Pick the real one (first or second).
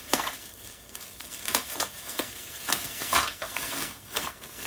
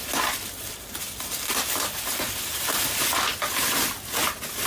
second